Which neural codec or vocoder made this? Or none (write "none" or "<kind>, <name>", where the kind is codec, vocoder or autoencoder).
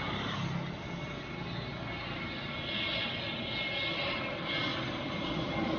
none